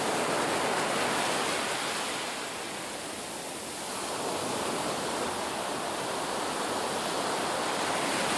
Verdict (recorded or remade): recorded